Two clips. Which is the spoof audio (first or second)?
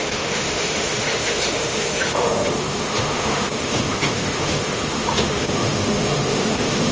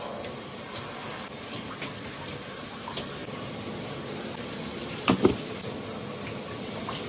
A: first